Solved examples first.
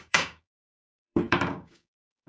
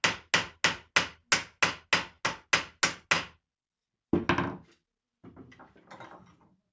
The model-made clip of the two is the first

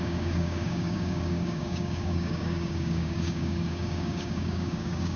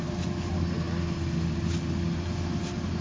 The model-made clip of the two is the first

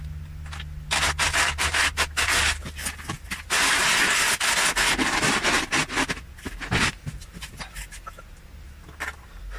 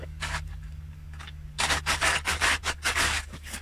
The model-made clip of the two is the second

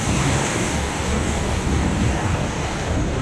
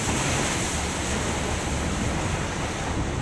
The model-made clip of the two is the first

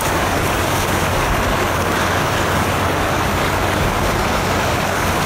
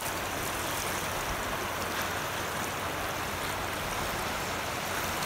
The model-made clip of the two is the first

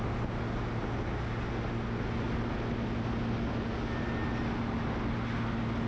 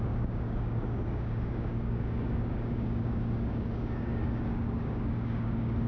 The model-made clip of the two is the second